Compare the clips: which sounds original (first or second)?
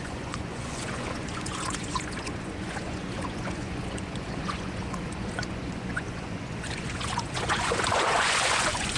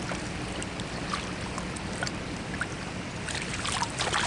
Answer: second